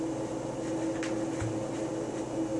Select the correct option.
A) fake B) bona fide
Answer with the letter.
B